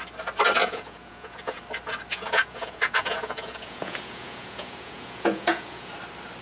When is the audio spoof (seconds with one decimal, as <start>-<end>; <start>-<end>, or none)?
0.6-1.6; 2.1-5.9